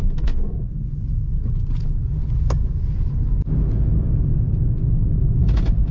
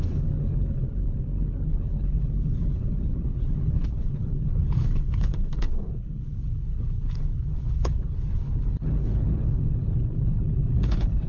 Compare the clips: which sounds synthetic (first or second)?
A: second